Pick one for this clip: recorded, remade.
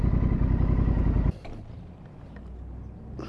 recorded